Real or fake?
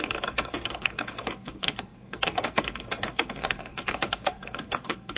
fake